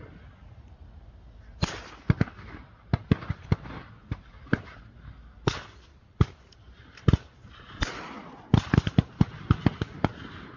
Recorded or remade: recorded